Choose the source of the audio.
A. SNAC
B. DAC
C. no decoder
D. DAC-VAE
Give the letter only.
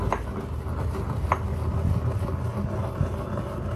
C